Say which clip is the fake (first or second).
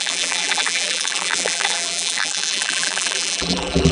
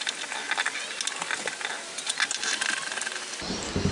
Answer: first